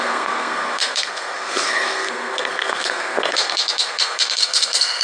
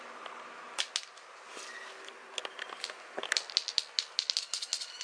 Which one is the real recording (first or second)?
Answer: second